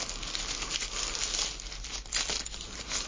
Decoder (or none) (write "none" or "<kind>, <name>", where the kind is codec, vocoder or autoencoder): none